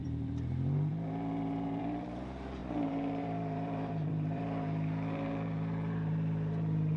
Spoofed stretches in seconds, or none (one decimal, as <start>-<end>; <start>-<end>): 0.0-7.0